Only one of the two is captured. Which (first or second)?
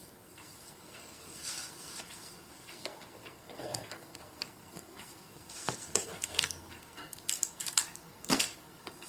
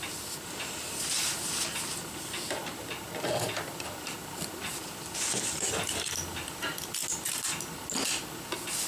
second